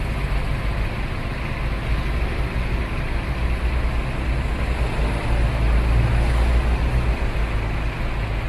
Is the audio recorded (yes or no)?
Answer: yes